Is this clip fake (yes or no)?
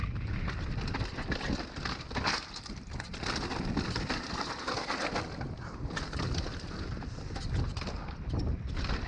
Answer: no